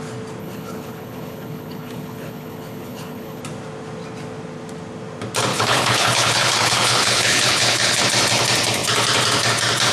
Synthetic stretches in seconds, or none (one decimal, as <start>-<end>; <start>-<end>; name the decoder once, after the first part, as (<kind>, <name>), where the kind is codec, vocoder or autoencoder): 0.4-3.4 (codec, HILCodec); 5.5-8.0